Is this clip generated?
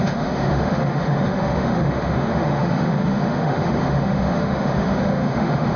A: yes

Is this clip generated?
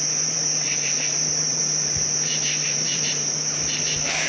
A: yes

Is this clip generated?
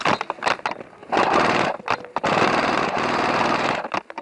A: no